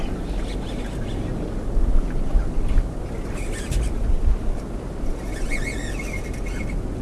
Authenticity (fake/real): real